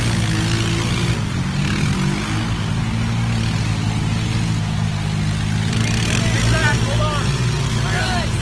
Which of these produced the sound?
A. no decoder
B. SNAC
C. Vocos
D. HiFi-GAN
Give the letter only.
A